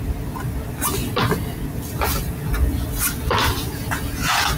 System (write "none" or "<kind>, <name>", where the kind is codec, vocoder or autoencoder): none